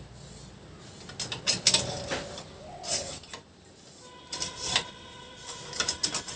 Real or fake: real